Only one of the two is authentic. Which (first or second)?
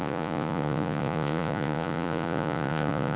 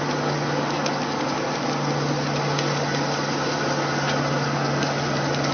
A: second